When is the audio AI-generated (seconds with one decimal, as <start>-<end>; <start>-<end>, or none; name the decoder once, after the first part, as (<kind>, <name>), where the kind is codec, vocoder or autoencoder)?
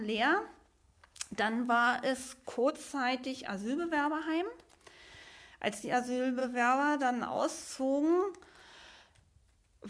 0.8-2.7 (codec, DAC); 6.4-7.6